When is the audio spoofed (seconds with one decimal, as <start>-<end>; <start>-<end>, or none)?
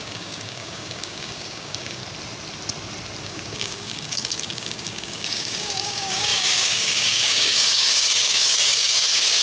0.0-2.0; 3.2-9.4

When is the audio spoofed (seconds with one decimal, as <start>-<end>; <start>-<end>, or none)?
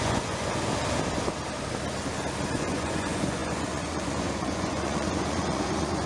0.0-0.7; 2.5-6.1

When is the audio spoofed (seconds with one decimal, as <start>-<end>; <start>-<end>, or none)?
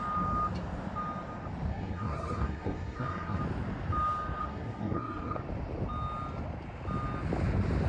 1.7-3.4; 4.4-5.4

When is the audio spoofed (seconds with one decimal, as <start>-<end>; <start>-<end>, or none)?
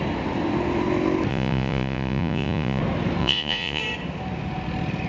1.3-2.8; 3.2-3.8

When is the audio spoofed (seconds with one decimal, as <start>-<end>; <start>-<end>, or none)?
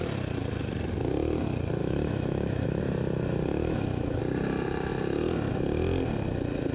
1.8-2.8; 3.5-4.2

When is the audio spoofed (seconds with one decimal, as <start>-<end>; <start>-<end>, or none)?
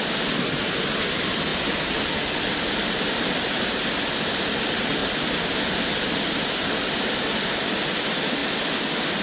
none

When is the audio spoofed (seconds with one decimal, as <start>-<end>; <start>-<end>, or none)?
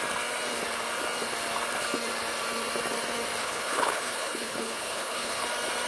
3.4-5.4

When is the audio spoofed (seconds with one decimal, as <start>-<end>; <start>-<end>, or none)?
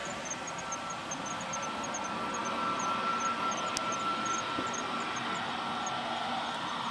none